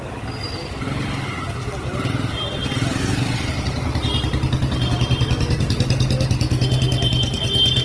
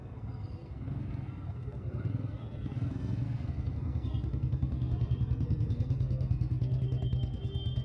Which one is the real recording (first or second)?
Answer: first